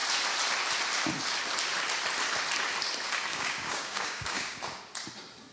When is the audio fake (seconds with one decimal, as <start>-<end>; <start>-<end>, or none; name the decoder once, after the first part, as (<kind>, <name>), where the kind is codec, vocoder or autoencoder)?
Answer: 3.3-4.6 (codec, DAC)